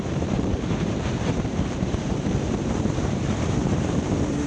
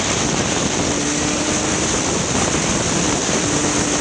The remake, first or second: first